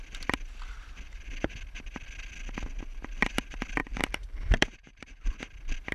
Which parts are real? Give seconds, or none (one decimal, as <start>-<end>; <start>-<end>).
0.0-3.8; 5.3-5.9